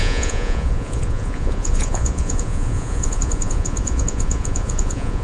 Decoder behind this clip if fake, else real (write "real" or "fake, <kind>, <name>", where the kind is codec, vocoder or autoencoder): fake, vocoder, Vocos